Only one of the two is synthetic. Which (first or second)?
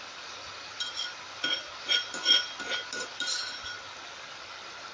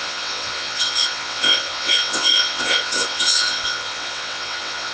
second